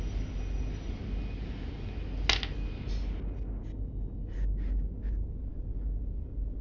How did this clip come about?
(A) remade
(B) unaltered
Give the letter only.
B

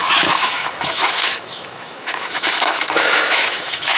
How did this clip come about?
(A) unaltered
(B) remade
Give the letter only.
B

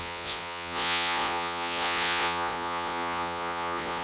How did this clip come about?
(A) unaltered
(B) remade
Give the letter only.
B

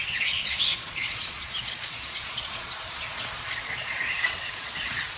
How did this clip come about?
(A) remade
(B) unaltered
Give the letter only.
A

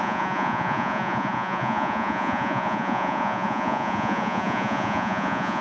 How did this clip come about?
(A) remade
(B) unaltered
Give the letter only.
A